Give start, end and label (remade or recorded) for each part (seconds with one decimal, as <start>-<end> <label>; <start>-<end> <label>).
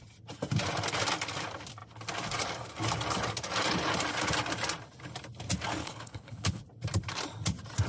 0.0-5.8 recorded; 5.8-6.6 remade; 6.6-7.9 recorded